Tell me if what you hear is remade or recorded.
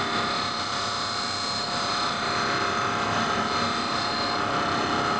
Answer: remade